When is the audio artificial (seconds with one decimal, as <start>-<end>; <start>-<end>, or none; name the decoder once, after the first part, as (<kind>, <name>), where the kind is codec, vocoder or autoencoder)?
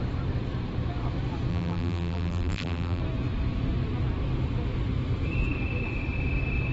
1.5-3.0 (vocoder, BigVGAN v2)